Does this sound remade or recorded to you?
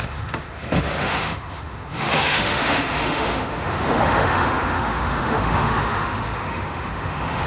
remade